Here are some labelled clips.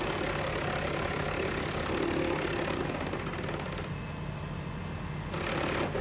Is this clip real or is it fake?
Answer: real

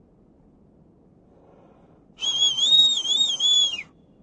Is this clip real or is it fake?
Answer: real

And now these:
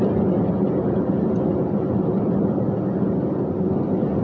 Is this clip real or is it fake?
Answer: real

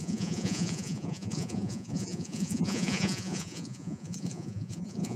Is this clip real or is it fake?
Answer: fake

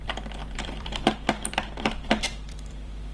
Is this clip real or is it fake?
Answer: fake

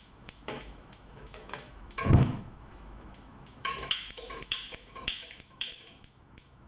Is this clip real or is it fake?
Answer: fake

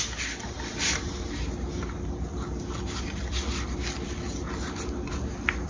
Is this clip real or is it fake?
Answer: real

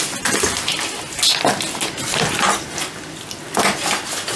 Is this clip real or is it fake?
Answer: real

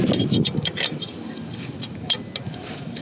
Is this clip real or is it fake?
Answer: real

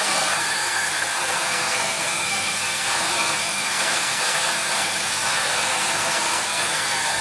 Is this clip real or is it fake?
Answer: fake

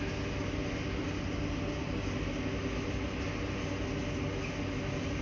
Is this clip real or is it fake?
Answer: real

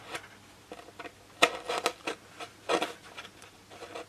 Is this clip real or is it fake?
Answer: real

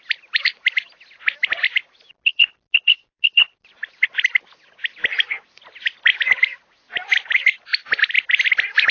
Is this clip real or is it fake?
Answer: real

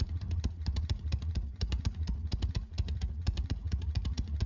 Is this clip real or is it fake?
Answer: fake